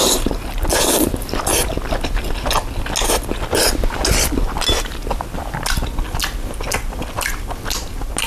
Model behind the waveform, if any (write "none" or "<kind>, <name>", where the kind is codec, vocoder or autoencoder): none